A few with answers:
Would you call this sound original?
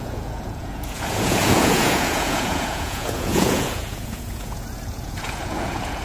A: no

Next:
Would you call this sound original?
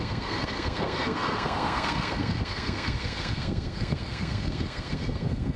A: no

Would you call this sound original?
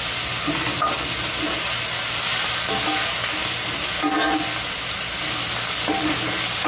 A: yes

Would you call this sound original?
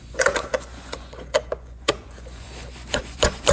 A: no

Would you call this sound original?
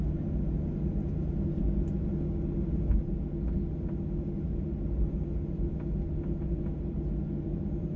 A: yes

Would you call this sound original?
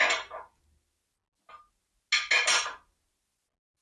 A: yes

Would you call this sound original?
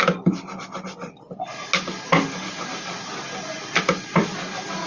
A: yes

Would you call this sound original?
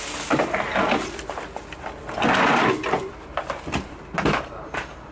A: yes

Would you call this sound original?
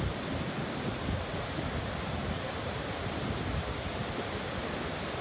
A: yes